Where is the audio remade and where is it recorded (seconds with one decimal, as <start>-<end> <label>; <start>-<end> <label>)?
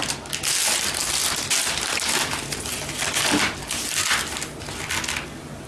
0.0-5.7 recorded